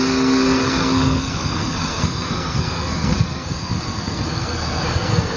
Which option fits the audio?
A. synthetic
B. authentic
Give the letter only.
A